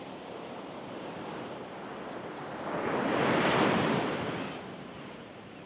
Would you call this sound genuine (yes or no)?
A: no